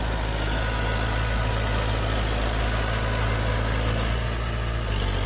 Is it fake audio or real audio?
real